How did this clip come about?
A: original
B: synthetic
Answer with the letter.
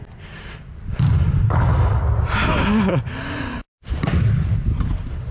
A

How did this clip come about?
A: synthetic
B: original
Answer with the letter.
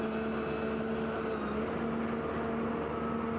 B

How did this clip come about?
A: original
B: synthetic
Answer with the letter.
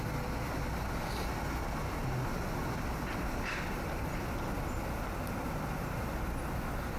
A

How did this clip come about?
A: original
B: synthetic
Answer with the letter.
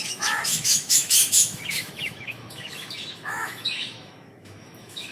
B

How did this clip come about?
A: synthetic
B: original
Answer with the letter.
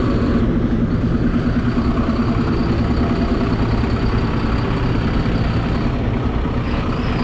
B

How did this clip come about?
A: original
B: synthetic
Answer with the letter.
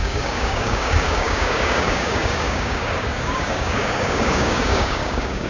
B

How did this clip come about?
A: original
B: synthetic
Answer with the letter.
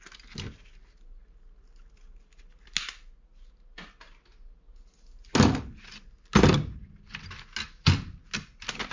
A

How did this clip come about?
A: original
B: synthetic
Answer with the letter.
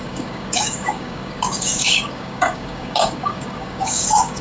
B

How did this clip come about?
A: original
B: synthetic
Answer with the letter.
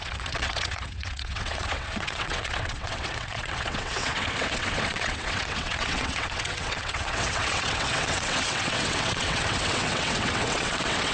B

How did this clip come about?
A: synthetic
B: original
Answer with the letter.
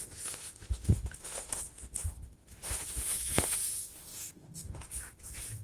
A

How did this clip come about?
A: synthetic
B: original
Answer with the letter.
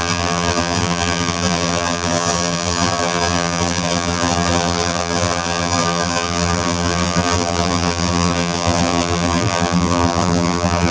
A